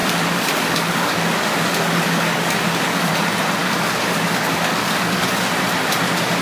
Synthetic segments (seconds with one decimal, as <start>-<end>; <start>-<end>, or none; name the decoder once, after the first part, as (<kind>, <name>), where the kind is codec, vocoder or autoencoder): 0.0-3.1 (codec, DAC); 3.6-5.4